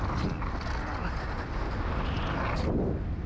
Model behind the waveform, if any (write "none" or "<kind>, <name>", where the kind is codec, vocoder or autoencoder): none